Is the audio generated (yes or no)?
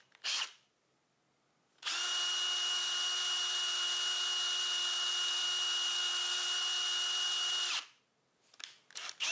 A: no